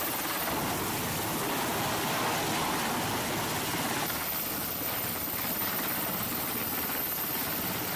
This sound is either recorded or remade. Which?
recorded